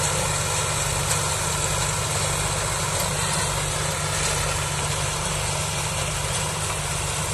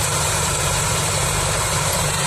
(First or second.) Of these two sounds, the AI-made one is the second